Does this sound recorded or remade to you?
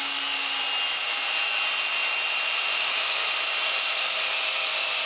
recorded